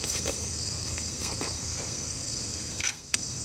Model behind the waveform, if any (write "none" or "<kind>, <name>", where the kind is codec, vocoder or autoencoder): codec, SNAC